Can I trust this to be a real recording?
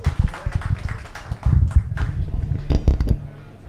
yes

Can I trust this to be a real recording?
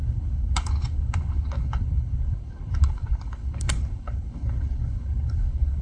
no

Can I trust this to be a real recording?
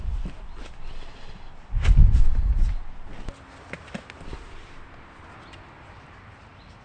yes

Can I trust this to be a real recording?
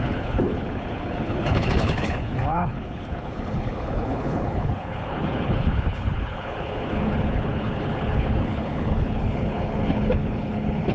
no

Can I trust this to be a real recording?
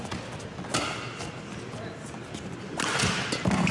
yes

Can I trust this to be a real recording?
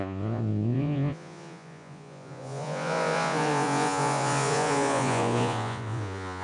no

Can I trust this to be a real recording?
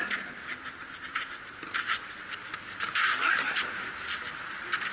yes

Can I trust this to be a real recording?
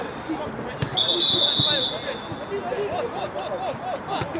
yes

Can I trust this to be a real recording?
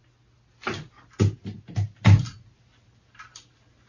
yes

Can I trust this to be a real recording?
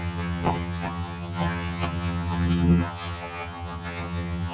no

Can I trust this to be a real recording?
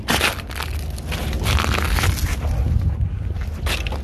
yes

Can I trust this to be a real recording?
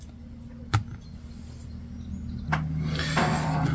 yes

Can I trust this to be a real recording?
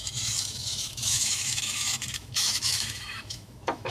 no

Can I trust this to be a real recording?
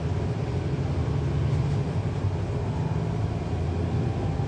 yes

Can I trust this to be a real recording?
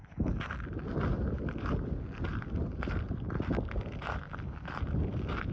yes